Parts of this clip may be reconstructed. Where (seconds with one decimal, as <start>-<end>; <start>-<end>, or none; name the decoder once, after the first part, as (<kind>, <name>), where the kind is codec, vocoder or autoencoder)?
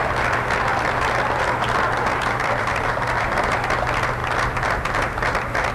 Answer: 2.1-3.3 (vocoder, BigVGAN v2)